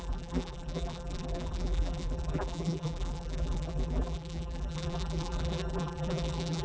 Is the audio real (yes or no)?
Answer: no